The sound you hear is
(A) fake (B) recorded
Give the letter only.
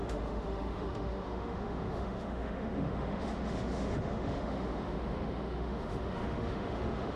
A